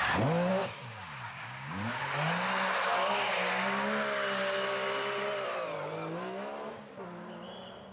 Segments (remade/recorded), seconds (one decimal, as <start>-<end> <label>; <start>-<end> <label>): 0.0-0.5 recorded; 0.5-2.0 remade; 2.0-7.9 recorded